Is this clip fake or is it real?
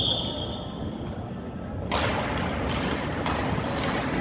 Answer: real